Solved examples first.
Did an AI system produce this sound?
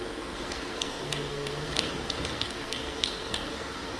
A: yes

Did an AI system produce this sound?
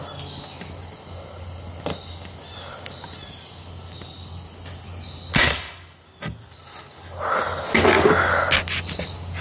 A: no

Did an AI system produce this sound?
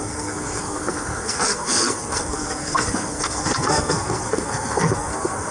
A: yes